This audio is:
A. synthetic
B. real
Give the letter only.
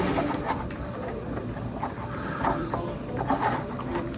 B